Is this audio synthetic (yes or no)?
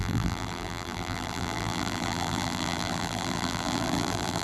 yes